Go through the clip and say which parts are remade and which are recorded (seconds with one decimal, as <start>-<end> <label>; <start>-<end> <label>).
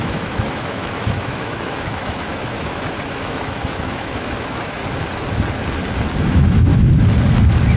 0.0-4.8 remade; 4.8-6.2 recorded; 6.2-6.7 remade; 6.7-7.8 recorded